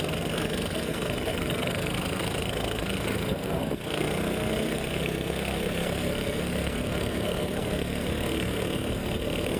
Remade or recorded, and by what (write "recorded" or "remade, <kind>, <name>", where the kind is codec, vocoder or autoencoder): remade, codec, SNAC